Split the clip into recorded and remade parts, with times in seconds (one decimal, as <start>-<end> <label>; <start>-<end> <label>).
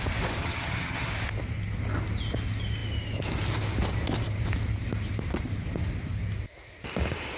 0.0-0.4 recorded; 0.4-1.1 remade; 1.1-7.4 recorded